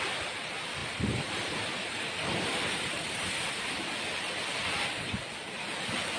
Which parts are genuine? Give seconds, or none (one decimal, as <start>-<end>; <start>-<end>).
0.0-0.8; 3.7-6.2